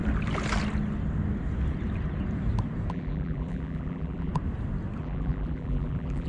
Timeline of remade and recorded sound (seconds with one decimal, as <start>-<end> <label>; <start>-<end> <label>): 0.0-2.9 recorded; 2.9-4.3 remade; 4.3-5.0 recorded; 5.0-6.3 remade